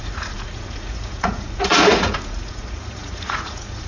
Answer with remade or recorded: remade